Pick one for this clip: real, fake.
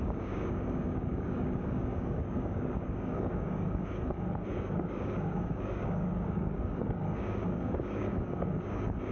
fake